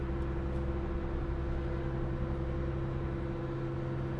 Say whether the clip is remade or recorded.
recorded